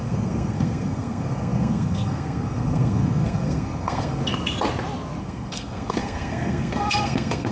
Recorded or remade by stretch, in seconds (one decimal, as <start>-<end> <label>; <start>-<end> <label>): 0.0-4.2 remade; 4.2-5.2 recorded; 5.2-7.5 remade